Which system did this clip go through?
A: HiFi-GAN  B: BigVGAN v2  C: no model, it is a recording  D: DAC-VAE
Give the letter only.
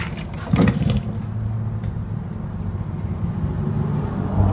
C